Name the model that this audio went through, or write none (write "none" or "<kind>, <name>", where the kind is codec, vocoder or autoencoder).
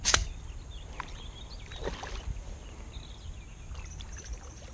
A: none